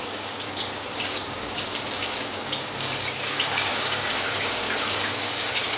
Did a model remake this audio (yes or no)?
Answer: yes